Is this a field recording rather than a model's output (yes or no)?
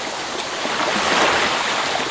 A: yes